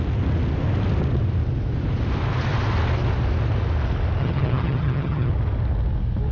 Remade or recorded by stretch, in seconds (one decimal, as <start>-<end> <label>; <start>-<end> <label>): 0.0-4.2 recorded; 4.2-5.3 remade; 5.3-6.3 recorded